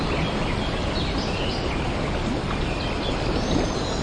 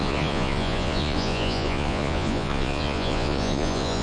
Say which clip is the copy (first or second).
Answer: second